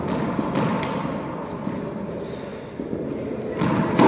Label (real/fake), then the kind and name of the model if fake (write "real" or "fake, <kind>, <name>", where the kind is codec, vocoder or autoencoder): real